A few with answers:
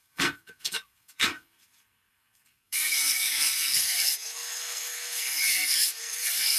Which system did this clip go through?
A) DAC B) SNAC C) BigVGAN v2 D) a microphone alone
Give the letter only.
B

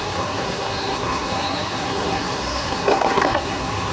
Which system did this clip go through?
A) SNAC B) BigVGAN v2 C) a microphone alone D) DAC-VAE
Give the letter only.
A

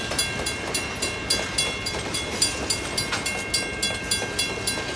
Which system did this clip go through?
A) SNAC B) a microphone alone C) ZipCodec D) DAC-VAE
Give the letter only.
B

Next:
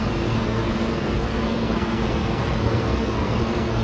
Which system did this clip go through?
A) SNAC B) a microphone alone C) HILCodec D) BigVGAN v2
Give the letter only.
A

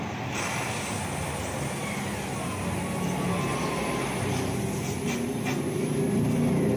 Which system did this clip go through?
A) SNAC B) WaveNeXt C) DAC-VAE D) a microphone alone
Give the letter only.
D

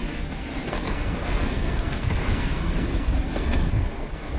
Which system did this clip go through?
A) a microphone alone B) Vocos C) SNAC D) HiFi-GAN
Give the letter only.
C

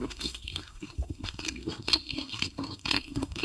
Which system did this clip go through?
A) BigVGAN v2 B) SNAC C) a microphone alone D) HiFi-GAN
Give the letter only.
B